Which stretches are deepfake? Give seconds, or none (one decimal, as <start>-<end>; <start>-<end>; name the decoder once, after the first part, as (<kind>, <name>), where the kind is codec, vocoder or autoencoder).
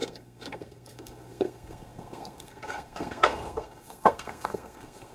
0.0-5.1 (codec, SNAC)